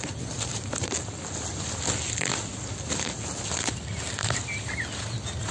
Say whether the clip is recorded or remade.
recorded